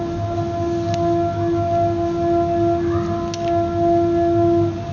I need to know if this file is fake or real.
real